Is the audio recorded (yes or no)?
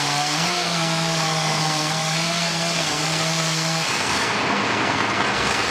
no